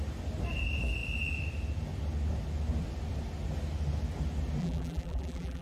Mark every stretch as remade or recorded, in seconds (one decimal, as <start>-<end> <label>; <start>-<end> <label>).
0.0-4.6 recorded; 4.6-5.6 remade